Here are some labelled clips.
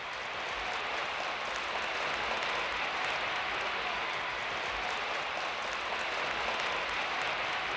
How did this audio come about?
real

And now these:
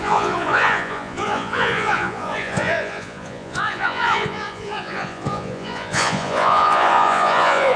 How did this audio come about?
fake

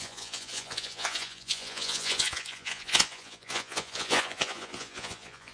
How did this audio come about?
fake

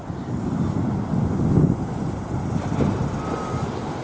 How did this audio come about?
real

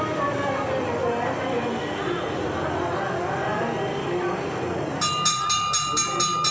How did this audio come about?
real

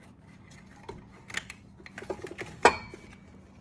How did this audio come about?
real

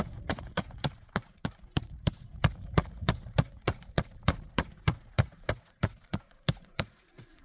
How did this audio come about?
fake